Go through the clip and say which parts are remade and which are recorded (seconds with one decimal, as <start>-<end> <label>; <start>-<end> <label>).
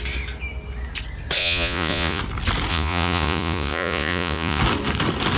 0.0-1.4 recorded; 1.4-2.2 remade; 2.2-2.7 recorded; 2.7-4.6 remade; 4.6-5.4 recorded